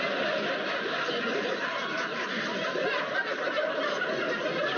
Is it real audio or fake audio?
real